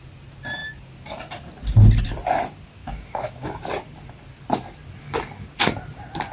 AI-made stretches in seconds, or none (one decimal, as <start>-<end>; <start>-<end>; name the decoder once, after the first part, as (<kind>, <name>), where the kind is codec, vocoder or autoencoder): 2.8-3.6 (autoencoder, DAC-VAE)